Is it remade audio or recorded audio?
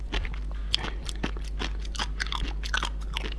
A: recorded